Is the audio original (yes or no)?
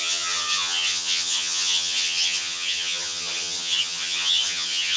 no